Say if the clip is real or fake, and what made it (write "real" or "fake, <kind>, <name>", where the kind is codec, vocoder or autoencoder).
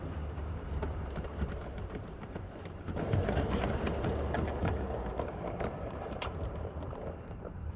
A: fake, vocoder, BigVGAN v2